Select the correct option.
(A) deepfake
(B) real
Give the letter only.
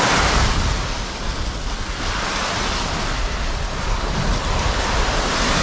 B